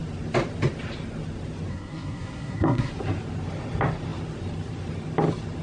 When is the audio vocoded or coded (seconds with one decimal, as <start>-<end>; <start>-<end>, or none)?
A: 1.7-2.9